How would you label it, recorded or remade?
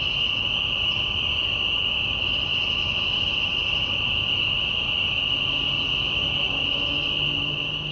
recorded